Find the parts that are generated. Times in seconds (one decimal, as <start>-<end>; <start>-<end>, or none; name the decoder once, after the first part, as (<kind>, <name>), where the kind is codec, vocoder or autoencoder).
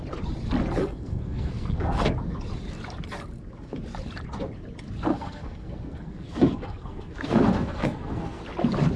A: 0.8-2.1 (codec, SNAC); 5.1-8.4